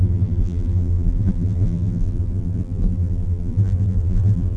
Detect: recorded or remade remade